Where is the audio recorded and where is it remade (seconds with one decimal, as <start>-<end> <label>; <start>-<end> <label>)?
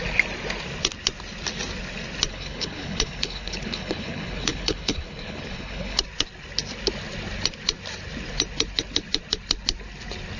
0.0-2.3 recorded; 2.3-6.0 remade; 6.0-10.4 recorded